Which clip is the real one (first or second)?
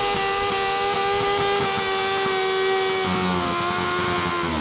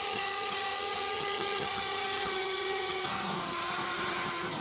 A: first